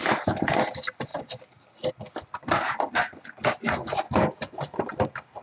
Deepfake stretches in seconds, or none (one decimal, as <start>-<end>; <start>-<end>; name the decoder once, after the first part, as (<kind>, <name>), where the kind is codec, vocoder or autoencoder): none